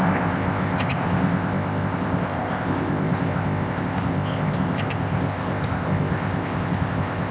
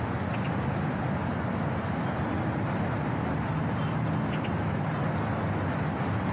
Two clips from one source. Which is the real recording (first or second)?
second